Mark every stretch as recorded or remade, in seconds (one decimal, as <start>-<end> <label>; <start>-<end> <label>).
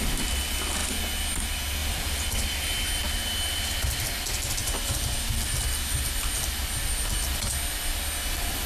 0.0-1.8 recorded; 1.8-4.0 remade; 4.0-8.7 recorded